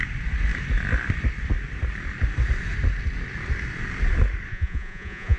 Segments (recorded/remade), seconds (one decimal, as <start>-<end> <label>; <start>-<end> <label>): 0.0-4.5 recorded; 4.5-5.4 remade